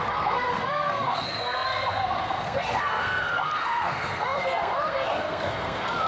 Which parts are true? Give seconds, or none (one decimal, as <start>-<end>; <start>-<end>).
none